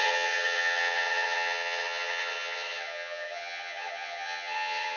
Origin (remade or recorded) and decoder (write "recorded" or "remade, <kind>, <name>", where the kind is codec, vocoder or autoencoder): remade, vocoder, HiFi-GAN